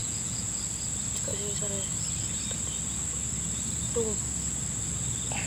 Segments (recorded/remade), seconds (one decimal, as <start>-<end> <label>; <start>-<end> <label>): 0.0-0.6 remade; 0.6-5.5 recorded